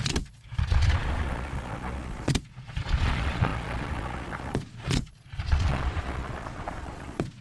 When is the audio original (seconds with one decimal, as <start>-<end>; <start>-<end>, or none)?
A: none